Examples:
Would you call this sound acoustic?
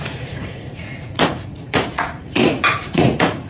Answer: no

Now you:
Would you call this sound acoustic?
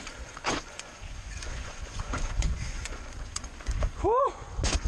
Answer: no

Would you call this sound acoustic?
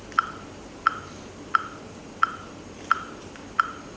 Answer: yes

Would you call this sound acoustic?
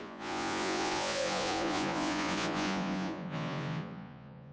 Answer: no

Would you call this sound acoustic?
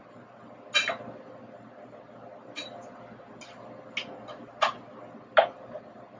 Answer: yes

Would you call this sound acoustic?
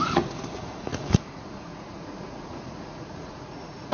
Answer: no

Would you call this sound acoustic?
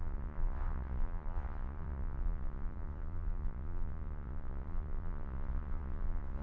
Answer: no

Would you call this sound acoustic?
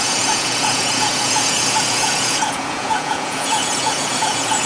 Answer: no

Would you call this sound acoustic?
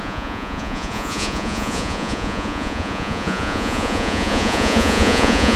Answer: no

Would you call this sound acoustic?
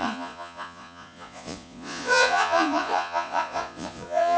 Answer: no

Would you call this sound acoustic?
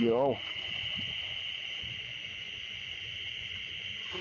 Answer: no